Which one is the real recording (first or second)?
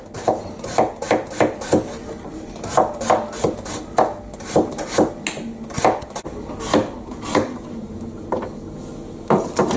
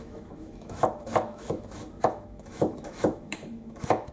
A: first